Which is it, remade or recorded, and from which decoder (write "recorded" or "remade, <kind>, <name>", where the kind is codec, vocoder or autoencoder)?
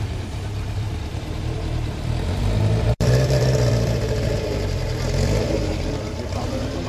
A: remade, vocoder, BigVGAN v2